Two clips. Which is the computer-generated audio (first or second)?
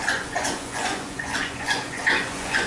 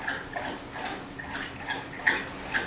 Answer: first